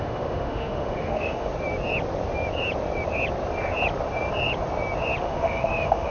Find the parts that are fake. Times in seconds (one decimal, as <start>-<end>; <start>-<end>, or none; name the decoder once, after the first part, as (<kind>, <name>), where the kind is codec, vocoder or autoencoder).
0.0-1.5 (autoencoder, DAC-VAE); 5.2-6.1